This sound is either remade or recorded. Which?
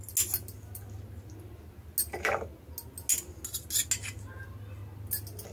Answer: recorded